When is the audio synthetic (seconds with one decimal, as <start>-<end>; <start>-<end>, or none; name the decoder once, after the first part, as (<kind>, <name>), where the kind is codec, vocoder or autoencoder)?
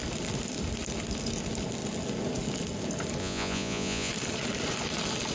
3.2-4.1 (vocoder, Vocos)